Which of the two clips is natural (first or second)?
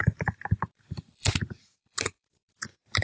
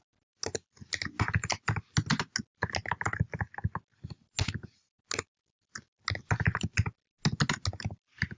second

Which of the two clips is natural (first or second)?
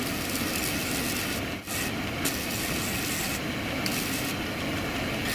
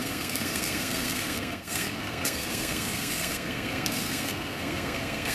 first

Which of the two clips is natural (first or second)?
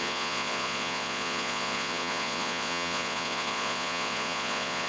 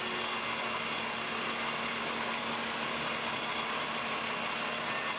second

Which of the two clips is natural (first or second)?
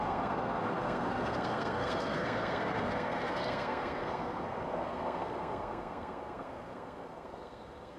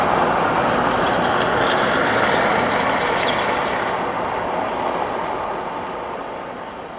second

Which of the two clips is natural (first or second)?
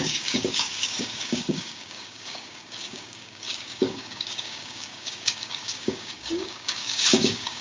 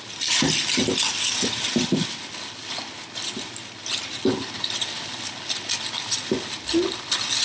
second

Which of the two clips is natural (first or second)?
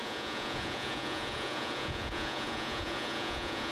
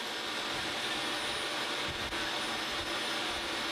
second